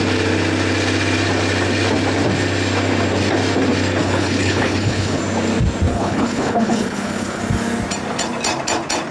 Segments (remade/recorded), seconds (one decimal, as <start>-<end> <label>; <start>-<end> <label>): 0.0-4.0 recorded; 4.0-5.2 remade; 5.2-5.9 recorded; 5.9-7.4 remade; 7.4-9.1 recorded